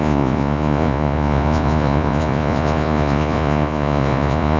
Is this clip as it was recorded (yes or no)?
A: no